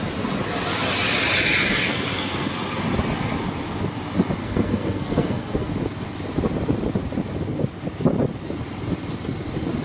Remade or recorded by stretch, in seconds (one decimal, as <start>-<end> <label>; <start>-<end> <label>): 0.0-1.8 recorded; 1.8-2.5 remade; 2.5-4.4 recorded; 4.4-5.7 remade; 5.7-9.8 recorded